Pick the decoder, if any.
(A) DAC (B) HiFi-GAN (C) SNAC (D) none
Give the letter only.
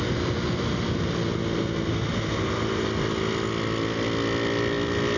D